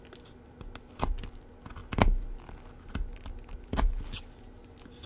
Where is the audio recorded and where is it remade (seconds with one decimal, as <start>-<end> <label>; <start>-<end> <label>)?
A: 0.0-5.1 recorded